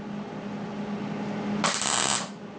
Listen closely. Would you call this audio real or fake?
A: real